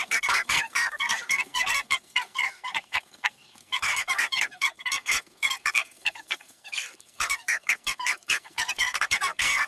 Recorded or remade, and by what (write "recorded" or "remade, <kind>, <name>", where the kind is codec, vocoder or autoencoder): remade, codec, SNAC